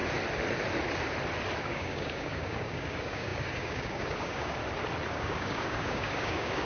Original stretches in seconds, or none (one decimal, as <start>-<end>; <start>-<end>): 0.0-1.6; 4.6-5.1